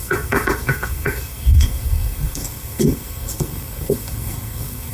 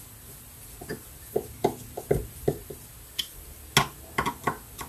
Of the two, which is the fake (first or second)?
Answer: first